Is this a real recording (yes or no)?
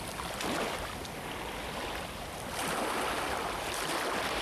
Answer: yes